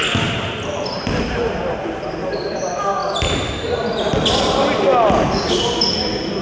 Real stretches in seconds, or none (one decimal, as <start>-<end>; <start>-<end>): 0.0-6.4